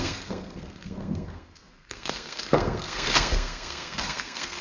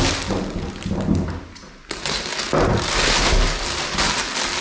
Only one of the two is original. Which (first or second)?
second